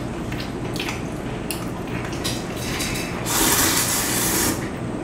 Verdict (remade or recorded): recorded